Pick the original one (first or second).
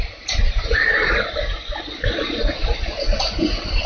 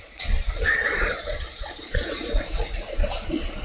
first